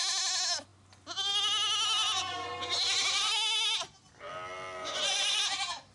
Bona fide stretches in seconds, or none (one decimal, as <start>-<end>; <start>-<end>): 0.0-4.8; 5.4-5.9